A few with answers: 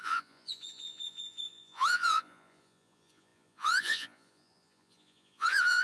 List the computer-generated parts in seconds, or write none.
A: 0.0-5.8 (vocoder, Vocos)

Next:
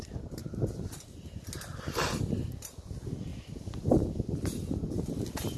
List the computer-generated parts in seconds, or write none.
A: none

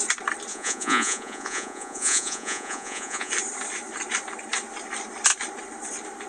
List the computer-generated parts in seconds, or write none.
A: 0.5-3.3 (vocoder, Vocos)

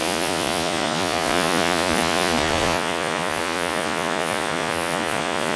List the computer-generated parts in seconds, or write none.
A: 0.0-5.6 (vocoder, Vocos)